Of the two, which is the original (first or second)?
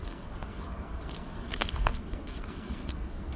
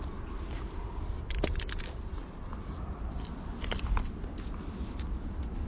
second